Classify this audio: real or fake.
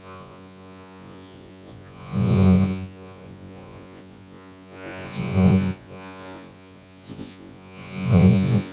fake